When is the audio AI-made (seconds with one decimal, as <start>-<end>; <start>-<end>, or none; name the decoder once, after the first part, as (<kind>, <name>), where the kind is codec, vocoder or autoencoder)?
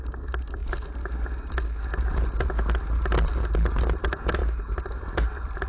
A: none